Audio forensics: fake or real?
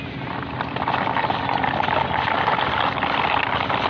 real